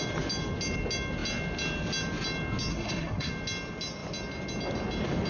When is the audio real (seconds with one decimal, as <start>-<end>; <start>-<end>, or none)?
0.0-2.7; 3.3-5.3